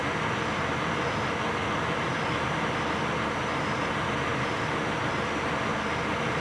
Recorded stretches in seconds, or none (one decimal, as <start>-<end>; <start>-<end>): 0.0-6.4